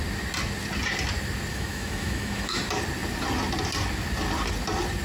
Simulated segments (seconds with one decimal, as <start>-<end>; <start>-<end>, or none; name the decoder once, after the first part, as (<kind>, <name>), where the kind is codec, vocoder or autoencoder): 1.5-2.6 (autoencoder, DAC-VAE)